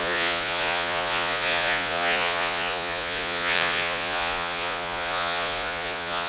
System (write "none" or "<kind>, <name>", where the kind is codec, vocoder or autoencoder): vocoder, Vocos